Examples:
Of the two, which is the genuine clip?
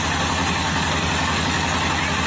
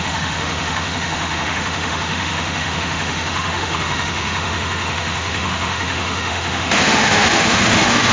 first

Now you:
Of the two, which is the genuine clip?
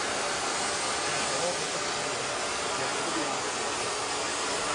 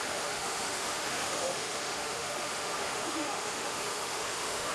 first